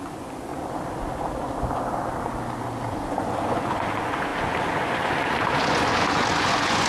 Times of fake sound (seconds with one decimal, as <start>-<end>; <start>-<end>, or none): 0.0-0.5; 2.9-6.9